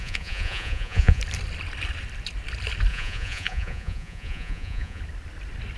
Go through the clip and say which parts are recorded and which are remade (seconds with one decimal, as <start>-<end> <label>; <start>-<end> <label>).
0.0-1.2 remade; 1.2-2.9 recorded; 2.9-5.0 remade; 5.0-5.8 recorded